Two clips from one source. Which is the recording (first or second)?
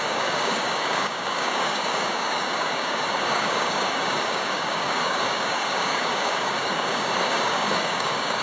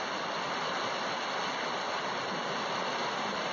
second